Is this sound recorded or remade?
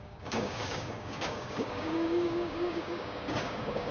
remade